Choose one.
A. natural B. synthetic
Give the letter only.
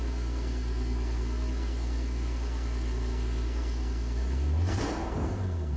B